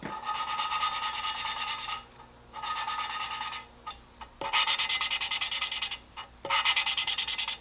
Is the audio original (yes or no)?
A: yes